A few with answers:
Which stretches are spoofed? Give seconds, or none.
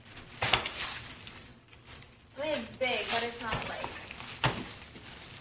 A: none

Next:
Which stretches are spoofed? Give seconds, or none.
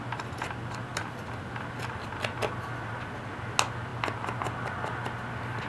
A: none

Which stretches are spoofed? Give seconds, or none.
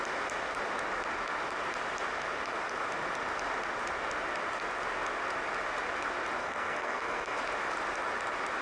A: 6.4-7.4 (codec, SNAC)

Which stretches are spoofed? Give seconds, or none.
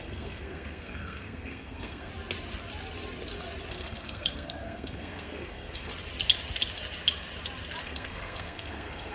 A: 0.0-2.1 (codec, SNAC); 3.7-5.9; 7.8-9.1